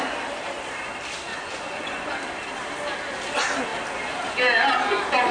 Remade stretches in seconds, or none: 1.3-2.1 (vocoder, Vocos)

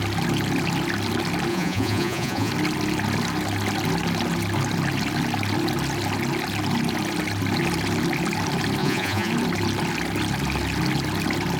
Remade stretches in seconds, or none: 1.5-2.5 (vocoder, Vocos); 8.8-9.3

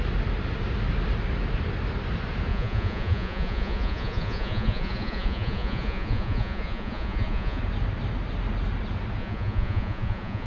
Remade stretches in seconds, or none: 2.5-7.6 (vocoder, Vocos); 9.2-10.5